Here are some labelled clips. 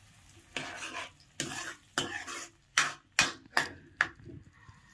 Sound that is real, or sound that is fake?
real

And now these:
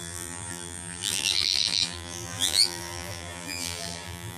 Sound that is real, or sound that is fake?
fake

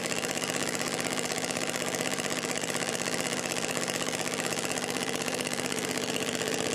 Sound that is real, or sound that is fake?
fake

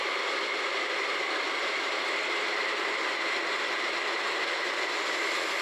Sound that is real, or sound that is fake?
real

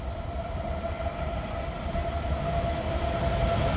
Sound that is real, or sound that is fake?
fake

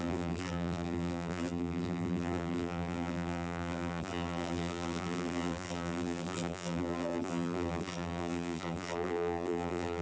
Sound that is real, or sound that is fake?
fake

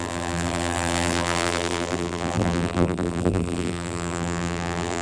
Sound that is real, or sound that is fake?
fake